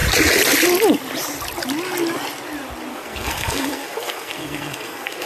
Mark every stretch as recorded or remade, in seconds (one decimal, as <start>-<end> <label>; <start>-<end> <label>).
0.0-2.9 recorded; 2.9-5.3 remade